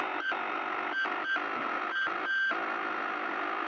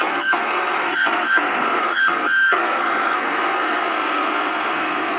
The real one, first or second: first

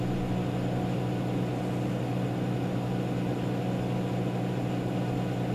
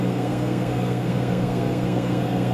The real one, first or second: first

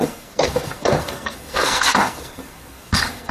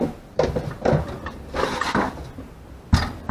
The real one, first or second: second